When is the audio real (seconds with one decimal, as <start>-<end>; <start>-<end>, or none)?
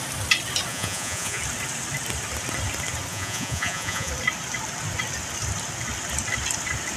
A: 0.0-0.7; 1.4-3.1; 4.1-7.0